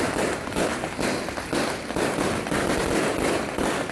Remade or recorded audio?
recorded